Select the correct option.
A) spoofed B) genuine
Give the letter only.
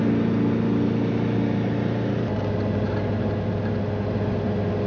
B